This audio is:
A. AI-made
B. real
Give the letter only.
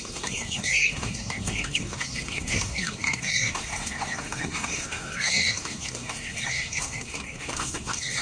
A